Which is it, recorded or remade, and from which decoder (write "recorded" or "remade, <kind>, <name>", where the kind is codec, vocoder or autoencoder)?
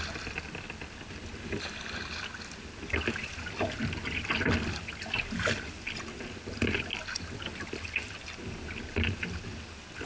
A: recorded